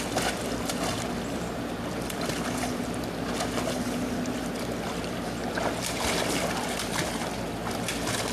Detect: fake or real real